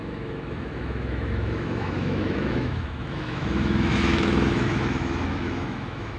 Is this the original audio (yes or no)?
no